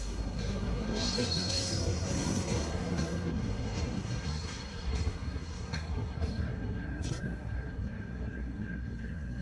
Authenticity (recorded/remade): remade